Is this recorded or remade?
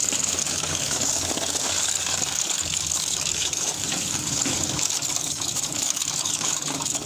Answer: remade